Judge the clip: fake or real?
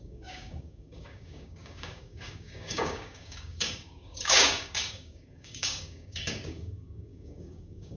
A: fake